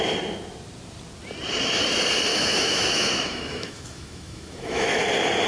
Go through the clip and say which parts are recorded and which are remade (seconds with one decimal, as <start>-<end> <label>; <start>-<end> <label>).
0.0-2.3 recorded; 2.3-5.0 remade; 5.0-5.5 recorded